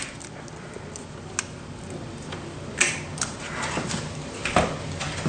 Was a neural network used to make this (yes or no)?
no